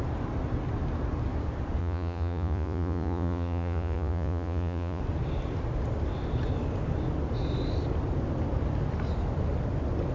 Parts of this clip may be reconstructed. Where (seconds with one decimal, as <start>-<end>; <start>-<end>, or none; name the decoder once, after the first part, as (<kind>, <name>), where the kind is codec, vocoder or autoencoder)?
1.8-5.0 (vocoder, Vocos)

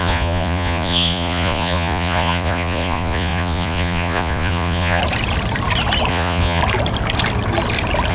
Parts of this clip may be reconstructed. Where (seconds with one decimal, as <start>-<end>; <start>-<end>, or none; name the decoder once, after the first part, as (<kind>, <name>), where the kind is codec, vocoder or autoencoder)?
0.0-5.0 (vocoder, Vocos); 6.1-6.6

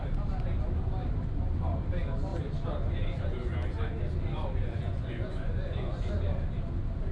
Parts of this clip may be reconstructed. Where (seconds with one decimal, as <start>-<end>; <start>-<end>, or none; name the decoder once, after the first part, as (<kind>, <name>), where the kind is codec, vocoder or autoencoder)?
4.6-6.1 (vocoder, Vocos)

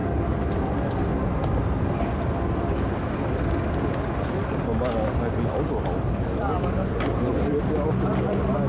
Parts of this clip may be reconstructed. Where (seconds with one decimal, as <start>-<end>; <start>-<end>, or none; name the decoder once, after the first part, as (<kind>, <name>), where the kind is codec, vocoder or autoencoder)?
none